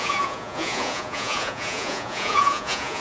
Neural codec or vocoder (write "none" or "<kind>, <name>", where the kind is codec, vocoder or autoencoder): vocoder, Vocos